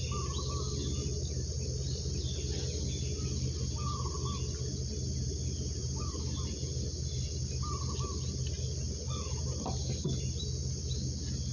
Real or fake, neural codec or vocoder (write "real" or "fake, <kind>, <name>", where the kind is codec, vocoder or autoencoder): real